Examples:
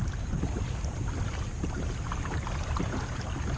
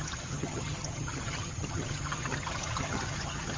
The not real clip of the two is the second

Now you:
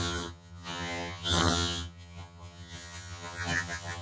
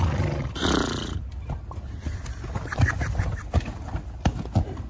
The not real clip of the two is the first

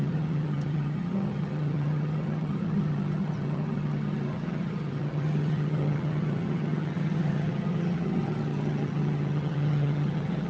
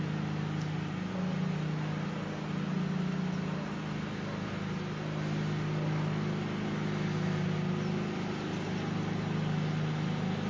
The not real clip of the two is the first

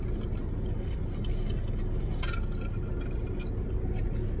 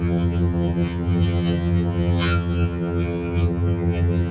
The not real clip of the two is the second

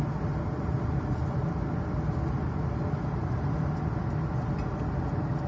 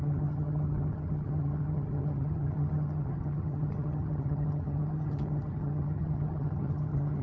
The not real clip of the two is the second